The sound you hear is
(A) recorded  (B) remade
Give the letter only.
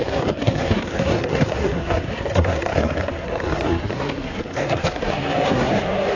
B